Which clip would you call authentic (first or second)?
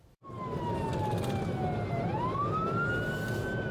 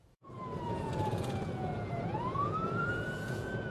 first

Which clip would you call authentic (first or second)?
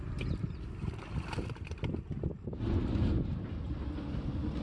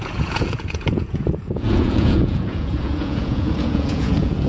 first